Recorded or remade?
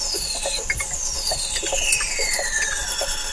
recorded